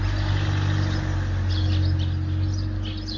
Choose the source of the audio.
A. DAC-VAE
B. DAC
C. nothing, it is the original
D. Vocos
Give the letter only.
C